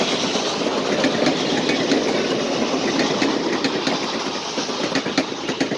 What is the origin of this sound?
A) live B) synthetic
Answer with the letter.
A